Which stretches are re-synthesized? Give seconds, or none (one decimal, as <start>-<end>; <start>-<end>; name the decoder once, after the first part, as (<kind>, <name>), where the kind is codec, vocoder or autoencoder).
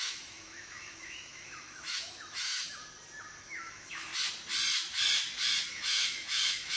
0.0-2.8 (autoencoder, DAC-VAE); 3.4-4.1; 5.7-6.8